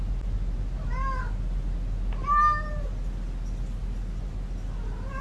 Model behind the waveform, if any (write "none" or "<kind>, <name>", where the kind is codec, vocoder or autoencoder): none